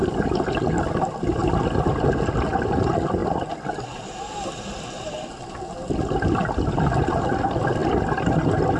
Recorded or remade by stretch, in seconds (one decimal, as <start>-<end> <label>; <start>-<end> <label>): 0.0-8.8 recorded